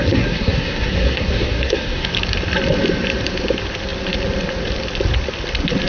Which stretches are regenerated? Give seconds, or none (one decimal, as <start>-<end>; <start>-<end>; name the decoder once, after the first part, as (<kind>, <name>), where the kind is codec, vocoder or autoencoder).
0.0-2.1 (codec, SNAC)

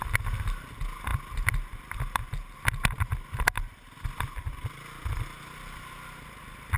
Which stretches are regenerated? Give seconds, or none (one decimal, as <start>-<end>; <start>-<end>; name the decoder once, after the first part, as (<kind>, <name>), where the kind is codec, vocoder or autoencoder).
none

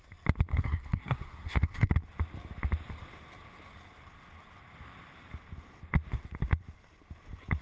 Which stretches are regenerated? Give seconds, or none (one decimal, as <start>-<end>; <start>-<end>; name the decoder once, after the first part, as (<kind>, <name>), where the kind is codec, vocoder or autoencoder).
0.5-1.9 (codec, SNAC)

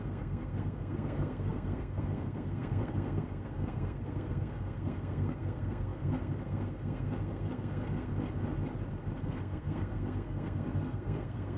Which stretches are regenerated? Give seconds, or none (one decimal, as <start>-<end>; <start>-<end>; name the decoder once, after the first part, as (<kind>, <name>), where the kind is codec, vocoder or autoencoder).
0.0-8.1 (codec, SNAC); 9.2-11.6

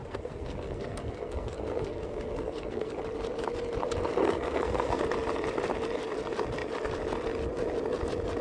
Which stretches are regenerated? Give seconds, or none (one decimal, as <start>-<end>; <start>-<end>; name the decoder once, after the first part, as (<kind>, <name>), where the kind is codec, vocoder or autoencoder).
0.0-3.0 (codec, SNAC); 4.2-5.0